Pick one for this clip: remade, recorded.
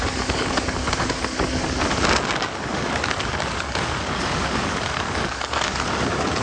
remade